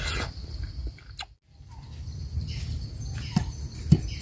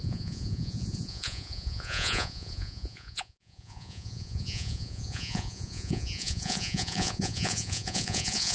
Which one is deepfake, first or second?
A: second